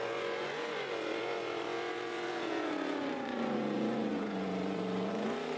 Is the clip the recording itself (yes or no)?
no